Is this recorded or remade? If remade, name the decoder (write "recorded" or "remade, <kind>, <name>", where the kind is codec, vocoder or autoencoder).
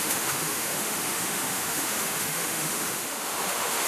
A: remade, autoencoder, DAC-VAE